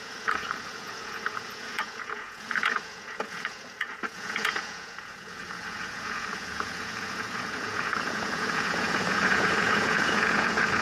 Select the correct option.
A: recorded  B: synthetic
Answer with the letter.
B